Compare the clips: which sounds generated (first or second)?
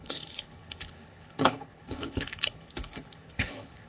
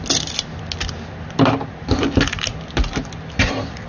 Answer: first